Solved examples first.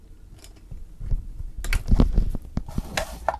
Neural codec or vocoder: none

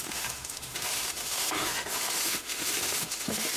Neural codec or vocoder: autoencoder, DAC-VAE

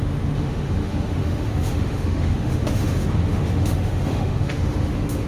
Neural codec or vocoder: autoencoder, DAC-VAE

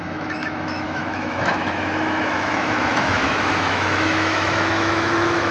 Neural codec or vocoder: autoencoder, DAC-VAE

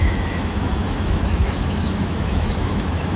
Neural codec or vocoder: autoencoder, DAC-VAE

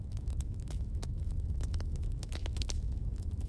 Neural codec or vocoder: autoencoder, DAC-VAE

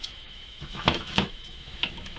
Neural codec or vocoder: autoencoder, DAC-VAE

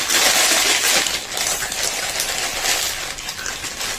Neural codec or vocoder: none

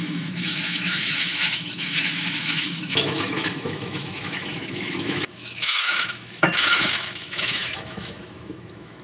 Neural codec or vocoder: autoencoder, DAC-VAE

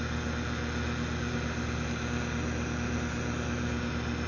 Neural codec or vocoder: none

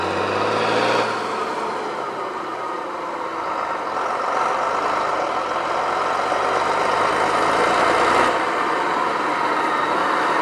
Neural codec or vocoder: none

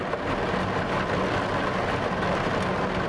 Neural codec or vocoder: none